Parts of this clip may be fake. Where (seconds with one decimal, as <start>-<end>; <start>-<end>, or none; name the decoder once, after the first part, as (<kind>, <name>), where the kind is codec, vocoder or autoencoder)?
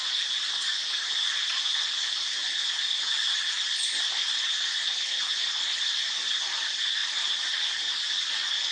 none